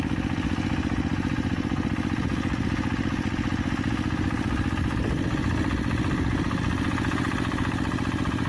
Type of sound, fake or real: real